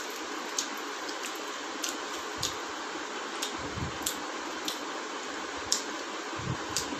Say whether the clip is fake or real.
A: real